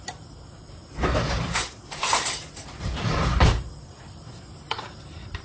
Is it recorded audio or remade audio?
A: remade